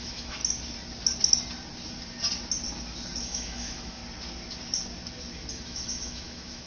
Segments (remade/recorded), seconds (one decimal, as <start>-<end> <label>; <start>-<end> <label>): 0.0-0.4 remade; 0.4-3.2 recorded; 3.2-4.0 remade; 4.0-5.5 recorded; 5.5-6.7 remade